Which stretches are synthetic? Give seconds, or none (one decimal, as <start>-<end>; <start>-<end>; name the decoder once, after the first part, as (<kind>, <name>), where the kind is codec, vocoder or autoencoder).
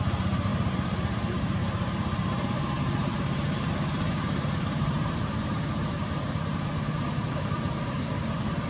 0.0-8.7 (vocoder, BigVGAN v2)